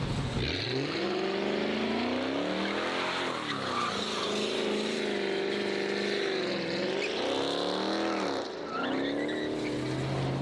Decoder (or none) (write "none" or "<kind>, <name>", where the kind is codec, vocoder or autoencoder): none